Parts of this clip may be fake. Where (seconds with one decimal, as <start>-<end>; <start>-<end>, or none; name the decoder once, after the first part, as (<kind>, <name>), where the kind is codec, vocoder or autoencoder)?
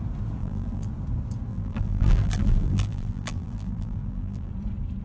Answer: 0.4-0.9 (vocoder, BigVGAN v2); 1.5-4.5